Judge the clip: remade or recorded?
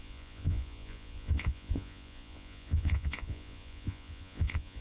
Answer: remade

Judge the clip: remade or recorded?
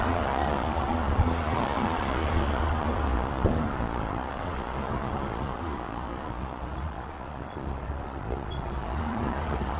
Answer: remade